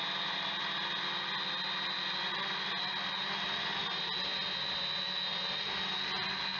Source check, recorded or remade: recorded